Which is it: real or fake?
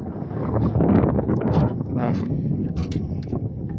fake